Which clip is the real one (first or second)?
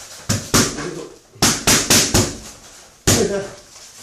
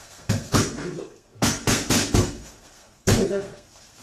first